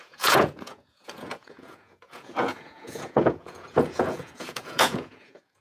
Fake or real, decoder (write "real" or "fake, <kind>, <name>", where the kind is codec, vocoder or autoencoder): fake, vocoder, Vocos